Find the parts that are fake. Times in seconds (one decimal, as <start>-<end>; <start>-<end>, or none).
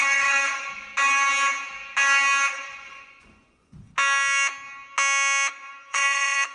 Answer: 0.0-0.9; 2.5-3.9; 5.5-6.5